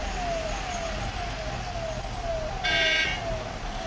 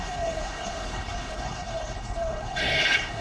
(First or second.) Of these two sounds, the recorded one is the first